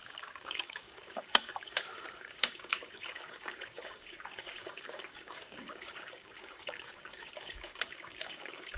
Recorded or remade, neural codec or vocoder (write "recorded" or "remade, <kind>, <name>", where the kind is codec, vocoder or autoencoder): remade, codec, DAC